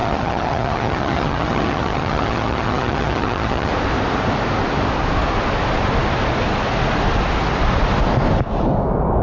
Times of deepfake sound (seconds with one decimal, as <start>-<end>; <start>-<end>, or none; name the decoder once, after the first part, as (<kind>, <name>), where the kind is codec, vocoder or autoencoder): 0.0-3.7 (vocoder, HiFi-GAN)